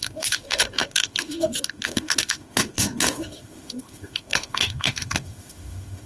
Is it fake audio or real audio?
fake